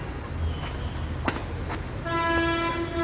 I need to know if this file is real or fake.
real